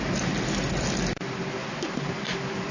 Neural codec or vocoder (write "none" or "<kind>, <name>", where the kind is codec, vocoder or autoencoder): none